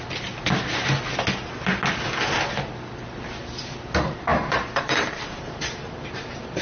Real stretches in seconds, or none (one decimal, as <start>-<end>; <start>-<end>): 0.0-4.3